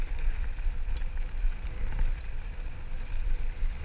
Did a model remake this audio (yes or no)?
no